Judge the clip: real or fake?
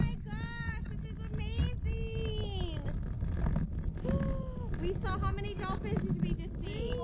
real